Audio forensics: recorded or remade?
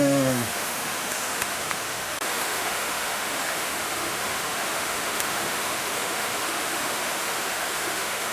remade